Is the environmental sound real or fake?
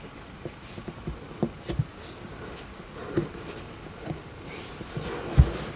real